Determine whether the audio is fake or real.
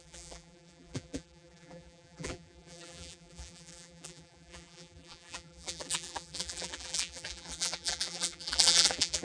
fake